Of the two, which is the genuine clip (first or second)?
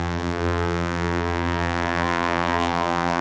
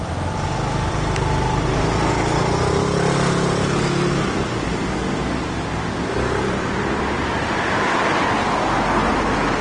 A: second